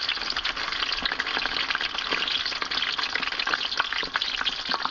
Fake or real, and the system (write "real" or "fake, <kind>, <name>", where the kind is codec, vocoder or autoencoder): real